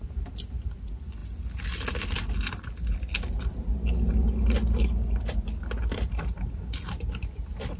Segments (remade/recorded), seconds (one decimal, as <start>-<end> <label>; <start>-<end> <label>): 0.0-7.8 recorded